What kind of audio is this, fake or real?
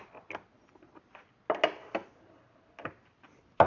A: real